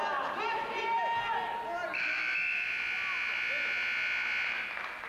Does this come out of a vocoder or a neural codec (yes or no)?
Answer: no